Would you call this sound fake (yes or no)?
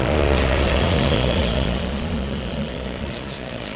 yes